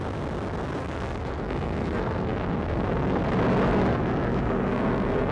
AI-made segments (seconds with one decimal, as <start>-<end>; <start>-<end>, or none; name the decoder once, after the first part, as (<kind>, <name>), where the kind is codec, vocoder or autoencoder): 0.8-3.2 (codec, SNAC); 3.9-5.3